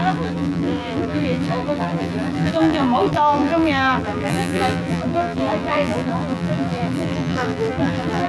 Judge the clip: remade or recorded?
remade